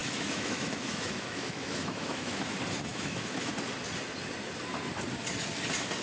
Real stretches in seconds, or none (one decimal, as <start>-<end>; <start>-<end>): 2.5-2.9; 3.5-6.0